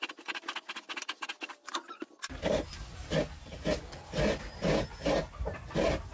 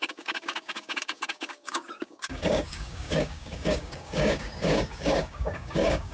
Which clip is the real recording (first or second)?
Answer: first